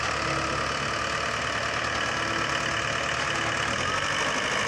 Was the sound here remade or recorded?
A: recorded